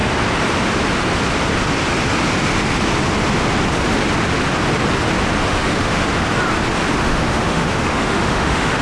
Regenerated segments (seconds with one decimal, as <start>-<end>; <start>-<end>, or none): 5.5-6.0; 7.0-8.8